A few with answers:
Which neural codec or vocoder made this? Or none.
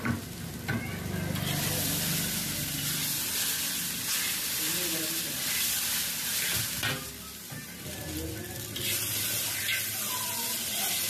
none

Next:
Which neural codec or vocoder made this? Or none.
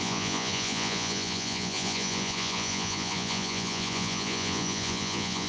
vocoder, Vocos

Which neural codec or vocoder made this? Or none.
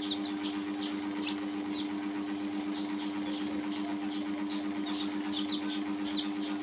none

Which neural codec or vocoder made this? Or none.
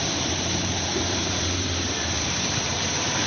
vocoder, BigVGAN v2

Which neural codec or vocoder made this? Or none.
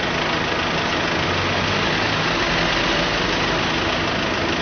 none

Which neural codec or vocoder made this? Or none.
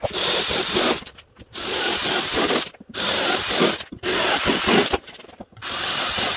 none